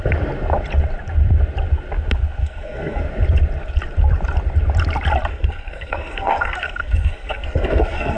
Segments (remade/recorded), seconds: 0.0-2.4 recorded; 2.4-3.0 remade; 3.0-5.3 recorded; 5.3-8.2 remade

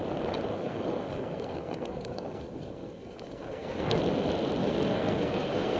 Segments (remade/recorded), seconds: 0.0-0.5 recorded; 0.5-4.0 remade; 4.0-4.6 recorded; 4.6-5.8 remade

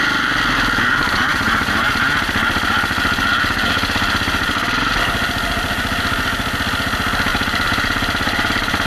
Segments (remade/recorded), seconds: 0.0-1.0 recorded; 1.0-1.9 remade; 1.9-7.3 recorded; 7.3-8.9 remade

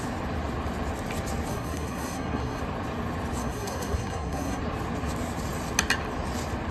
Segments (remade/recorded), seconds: 0.0-1.5 recorded; 1.5-2.6 remade; 2.6-3.4 recorded; 3.4-4.6 remade; 4.6-6.7 recorded

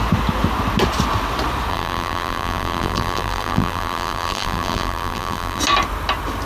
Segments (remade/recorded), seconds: 0.0-1.7 recorded; 1.7-5.6 remade; 5.6-6.5 recorded